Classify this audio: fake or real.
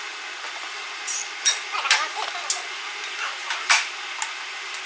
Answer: real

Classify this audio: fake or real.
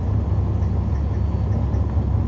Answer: real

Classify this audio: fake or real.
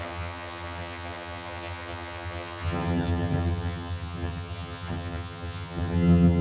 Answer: fake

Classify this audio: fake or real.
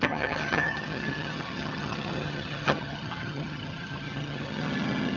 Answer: fake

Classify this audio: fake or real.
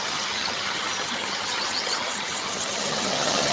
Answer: fake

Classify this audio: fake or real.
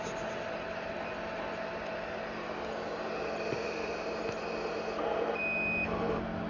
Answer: real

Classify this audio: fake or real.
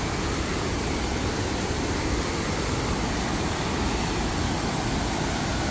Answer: real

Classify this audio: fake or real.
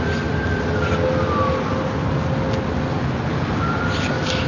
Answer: real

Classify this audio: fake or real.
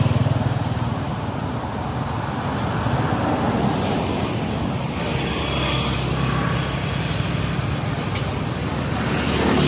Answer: real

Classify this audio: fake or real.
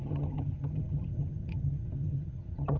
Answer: fake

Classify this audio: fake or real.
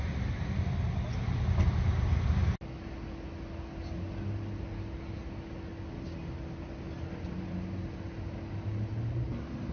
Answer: real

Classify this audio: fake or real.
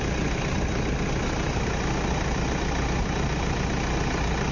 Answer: real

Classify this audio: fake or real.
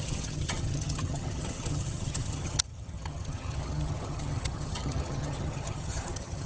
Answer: fake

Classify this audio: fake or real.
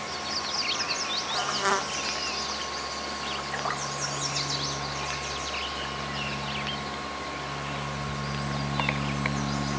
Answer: real